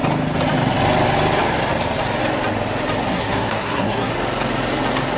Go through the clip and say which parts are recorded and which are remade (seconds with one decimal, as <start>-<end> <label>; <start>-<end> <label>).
0.0-3.1 recorded; 3.1-4.1 remade; 4.1-5.2 recorded